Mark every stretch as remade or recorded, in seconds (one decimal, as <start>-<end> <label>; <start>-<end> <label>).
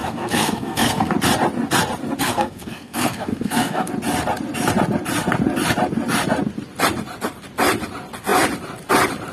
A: 0.0-1.1 remade; 1.1-2.2 recorded; 2.2-3.9 remade; 3.9-9.3 recorded